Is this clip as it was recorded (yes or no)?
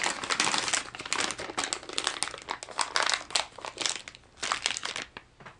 yes